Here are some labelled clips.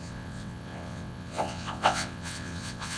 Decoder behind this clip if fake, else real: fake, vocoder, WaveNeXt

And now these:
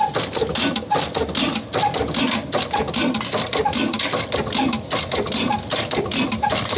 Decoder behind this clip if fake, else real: real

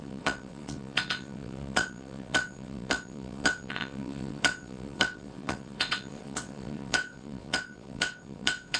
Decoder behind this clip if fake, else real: fake, vocoder, WaveNeXt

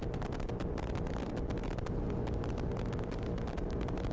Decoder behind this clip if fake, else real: real